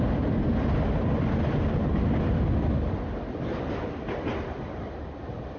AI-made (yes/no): no